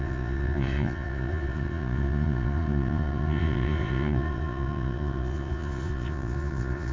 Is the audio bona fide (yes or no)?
no